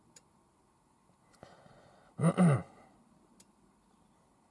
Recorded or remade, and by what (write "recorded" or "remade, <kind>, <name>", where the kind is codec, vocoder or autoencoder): recorded